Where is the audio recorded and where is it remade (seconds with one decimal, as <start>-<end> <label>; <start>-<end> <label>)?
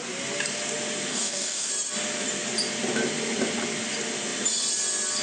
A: 0.0-1.1 recorded; 1.1-1.7 remade; 1.7-5.2 recorded